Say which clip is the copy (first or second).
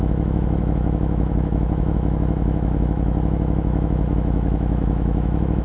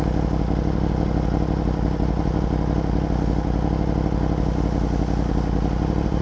first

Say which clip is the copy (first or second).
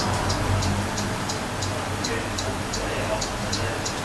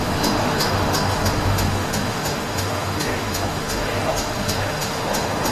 second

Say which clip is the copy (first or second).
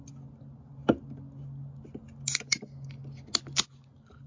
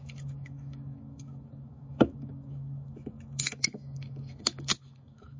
second